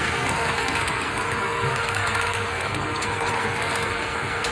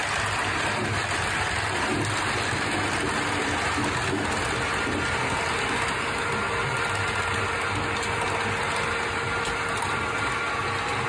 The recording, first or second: second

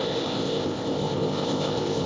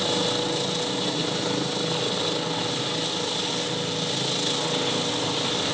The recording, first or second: second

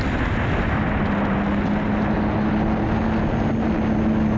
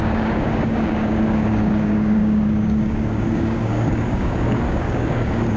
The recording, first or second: first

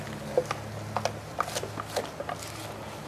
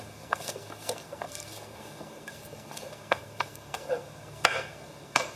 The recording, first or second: first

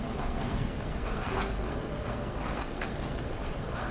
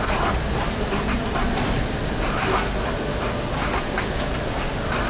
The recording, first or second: second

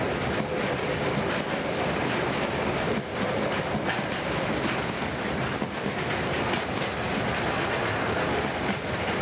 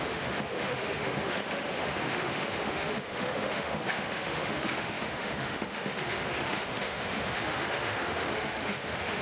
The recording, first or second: first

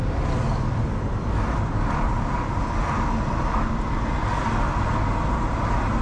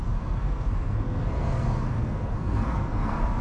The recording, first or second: first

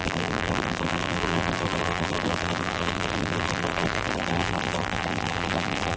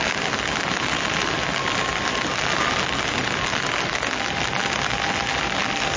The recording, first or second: second